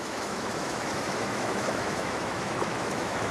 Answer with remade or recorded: remade